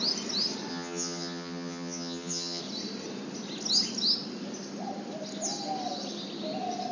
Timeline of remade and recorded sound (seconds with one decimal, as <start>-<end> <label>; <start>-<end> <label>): 0.0-0.7 recorded; 0.7-2.6 remade; 2.6-6.9 recorded